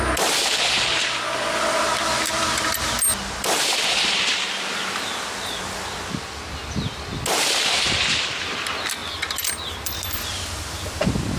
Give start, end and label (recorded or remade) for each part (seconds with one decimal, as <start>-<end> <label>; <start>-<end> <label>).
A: 0.0-11.4 recorded